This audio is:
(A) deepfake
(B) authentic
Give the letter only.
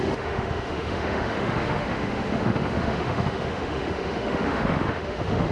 A